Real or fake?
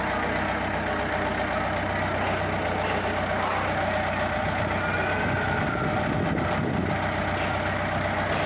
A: real